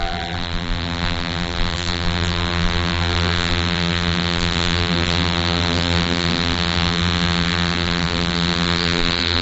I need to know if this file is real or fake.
fake